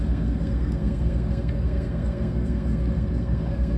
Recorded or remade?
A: remade